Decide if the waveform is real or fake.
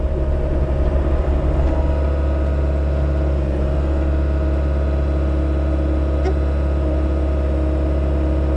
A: real